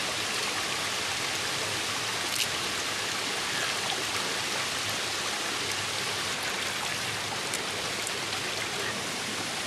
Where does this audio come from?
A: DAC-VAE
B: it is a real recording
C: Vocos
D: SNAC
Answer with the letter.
B